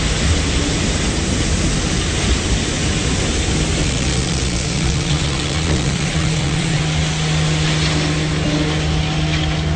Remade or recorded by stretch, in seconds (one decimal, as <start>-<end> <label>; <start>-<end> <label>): 0.0-3.8 recorded; 3.8-6.8 remade; 6.8-9.8 recorded